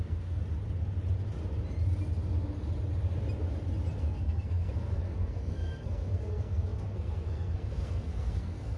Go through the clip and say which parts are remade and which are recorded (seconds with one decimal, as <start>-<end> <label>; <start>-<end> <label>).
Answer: 0.0-0.4 remade; 0.4-4.0 recorded; 4.0-8.8 remade